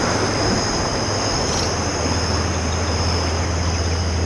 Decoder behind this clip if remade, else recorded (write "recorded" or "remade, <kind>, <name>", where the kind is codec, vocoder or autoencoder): recorded